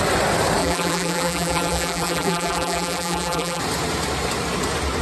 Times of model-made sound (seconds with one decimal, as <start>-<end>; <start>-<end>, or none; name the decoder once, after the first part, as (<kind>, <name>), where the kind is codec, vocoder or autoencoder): 0.6-3.6 (vocoder, BigVGAN v2)